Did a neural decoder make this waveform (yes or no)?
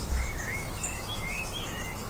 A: yes